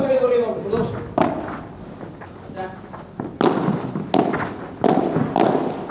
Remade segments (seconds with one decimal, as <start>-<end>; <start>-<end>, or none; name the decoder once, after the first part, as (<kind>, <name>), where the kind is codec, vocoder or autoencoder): none